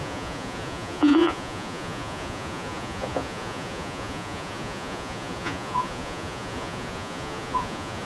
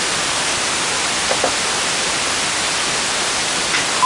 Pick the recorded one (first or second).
second